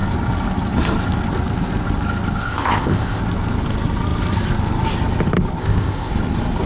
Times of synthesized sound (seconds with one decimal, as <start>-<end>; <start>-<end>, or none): 2.4-3.2; 5.6-6.1